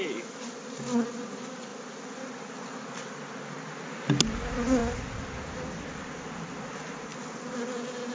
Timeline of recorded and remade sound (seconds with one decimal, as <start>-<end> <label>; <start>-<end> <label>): 0.0-8.1 recorded